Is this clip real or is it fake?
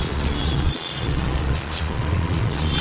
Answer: fake